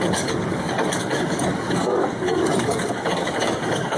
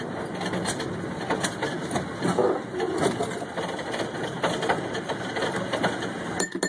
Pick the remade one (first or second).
first